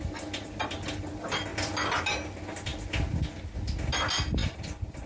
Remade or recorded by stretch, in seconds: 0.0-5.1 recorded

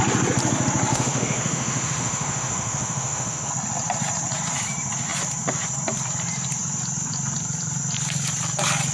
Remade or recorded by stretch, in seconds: 0.0-0.9 recorded; 0.9-3.5 remade; 3.5-8.9 recorded

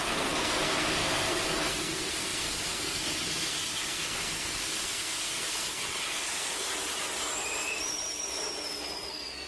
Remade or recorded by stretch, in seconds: 0.0-6.7 remade; 6.7-9.1 recorded; 9.1-9.5 remade

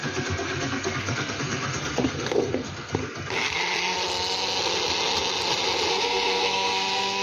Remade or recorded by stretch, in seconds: 0.0-3.0 remade; 3.0-5.9 recorded; 5.9-7.2 remade

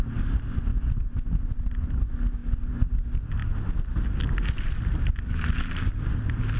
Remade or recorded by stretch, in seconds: 0.0-3.4 recorded; 3.4-6.6 remade

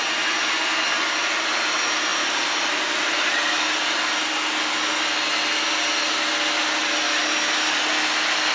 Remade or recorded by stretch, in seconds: 0.0-8.5 recorded

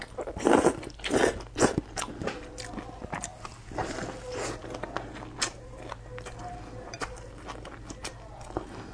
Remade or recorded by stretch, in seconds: 0.0-8.9 recorded

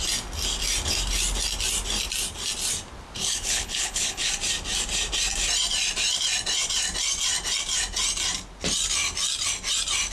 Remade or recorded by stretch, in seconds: 0.0-3.2 recorded; 3.2-4.3 remade; 4.3-10.1 recorded